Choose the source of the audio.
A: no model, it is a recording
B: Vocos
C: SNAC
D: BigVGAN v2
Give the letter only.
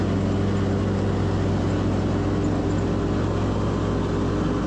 A